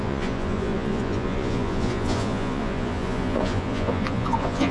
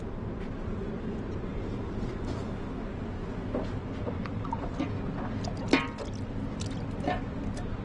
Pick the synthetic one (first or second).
first